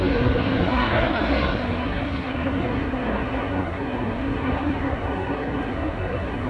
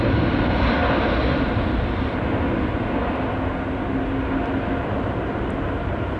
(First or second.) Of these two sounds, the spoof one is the first